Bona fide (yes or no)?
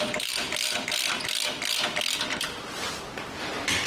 yes